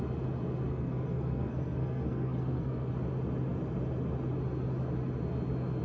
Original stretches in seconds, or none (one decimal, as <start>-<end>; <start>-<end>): 0.0-0.7; 2.9-5.8